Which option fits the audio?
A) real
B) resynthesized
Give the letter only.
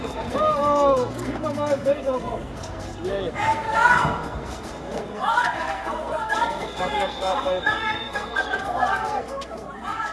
B